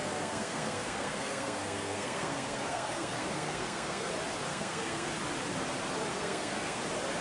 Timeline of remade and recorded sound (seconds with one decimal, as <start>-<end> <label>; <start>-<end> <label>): 0.0-4.1 remade; 4.1-4.5 recorded; 4.5-5.1 remade; 5.1-6.1 recorded; 6.1-6.8 remade; 6.8-7.2 recorded